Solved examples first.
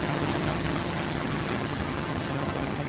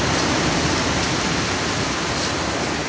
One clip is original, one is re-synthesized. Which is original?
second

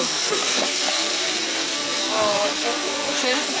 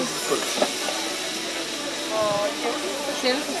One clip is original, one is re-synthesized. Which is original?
second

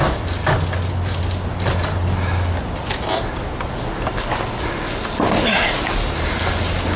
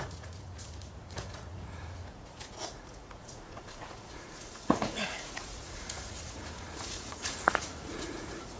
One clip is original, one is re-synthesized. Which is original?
first